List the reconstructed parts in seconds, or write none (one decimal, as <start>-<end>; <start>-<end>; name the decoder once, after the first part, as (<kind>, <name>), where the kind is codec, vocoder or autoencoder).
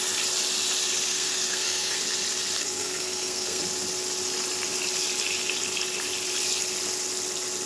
1.1-2.0 (codec, SNAC); 2.6-3.6